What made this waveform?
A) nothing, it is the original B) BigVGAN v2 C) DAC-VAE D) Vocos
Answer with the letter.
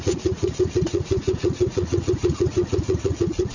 D